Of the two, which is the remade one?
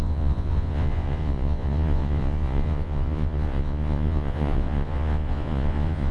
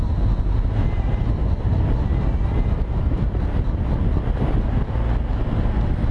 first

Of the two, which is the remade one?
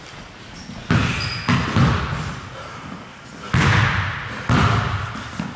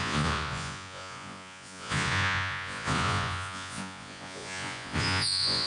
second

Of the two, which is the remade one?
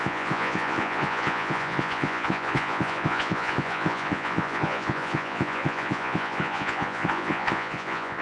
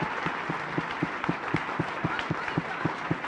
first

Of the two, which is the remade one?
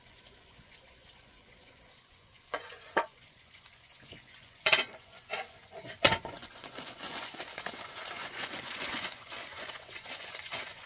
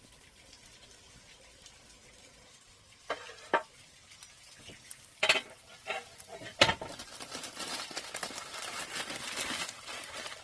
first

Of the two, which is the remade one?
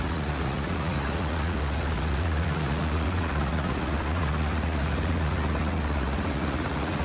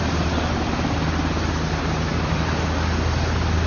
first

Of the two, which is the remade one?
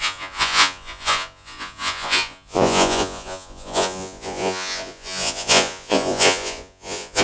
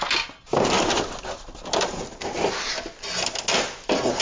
first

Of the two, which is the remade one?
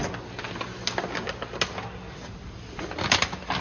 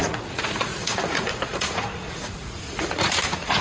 second